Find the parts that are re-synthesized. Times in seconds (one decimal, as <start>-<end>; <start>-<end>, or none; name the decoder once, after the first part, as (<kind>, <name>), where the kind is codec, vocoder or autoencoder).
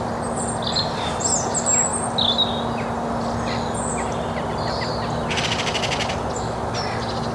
none